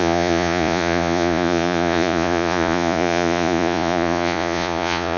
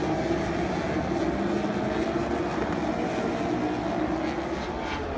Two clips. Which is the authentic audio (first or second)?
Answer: second